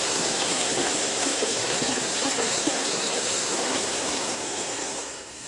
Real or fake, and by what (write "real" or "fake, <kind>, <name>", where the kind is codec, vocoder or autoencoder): fake, codec, SNAC